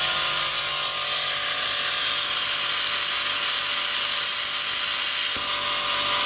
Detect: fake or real real